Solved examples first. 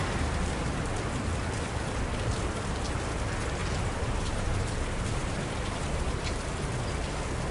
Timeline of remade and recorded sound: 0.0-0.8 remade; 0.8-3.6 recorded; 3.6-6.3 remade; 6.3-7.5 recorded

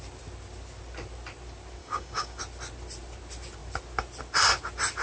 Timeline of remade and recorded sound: 0.0-1.8 recorded; 1.8-2.4 remade; 2.4-5.0 recorded

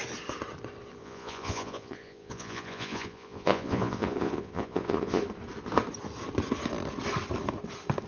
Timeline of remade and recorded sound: 0.0-1.0 recorded; 1.0-5.2 remade; 5.2-8.1 recorded

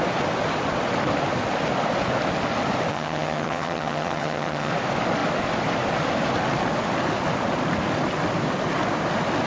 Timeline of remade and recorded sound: 0.0-2.9 recorded; 2.9-4.7 remade; 4.7-9.5 recorded

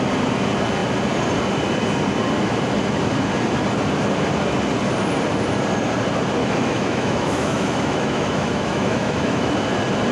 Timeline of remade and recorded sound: 0.0-6.4 recorded; 6.4-9.5 remade; 9.5-10.1 recorded

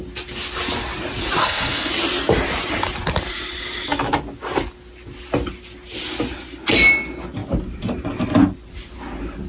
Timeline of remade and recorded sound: 0.0-1.4 recorded; 1.4-1.9 remade; 1.9-9.5 recorded